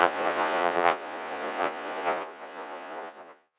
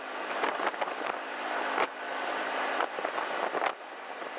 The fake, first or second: first